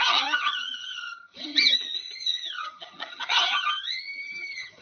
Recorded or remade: remade